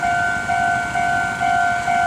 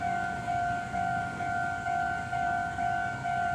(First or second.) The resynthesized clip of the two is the second